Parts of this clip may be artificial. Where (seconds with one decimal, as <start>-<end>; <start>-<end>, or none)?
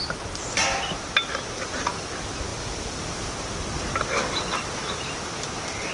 none